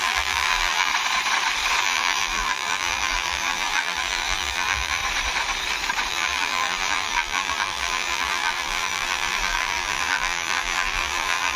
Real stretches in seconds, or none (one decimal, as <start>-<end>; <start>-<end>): 0.9-1.8; 5.0-6.1